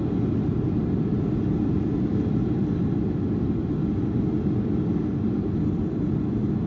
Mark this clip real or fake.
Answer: real